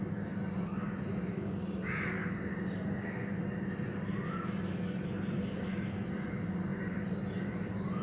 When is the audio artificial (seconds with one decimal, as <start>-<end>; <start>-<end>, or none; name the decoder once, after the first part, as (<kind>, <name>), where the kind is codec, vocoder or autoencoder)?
0.0-2.2 (vocoder, BigVGAN v2); 5.2-6.7; 7.5-8.0